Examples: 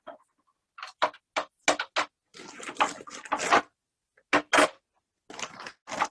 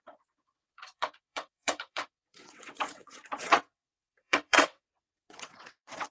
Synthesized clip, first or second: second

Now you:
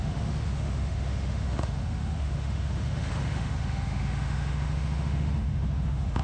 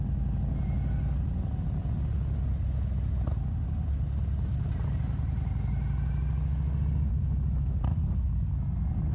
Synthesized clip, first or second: first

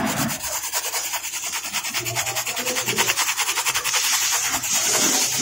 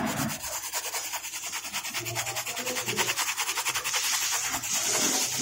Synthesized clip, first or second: first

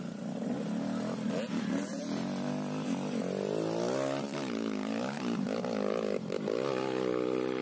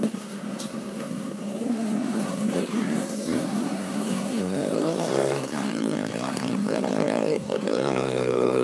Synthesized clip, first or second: second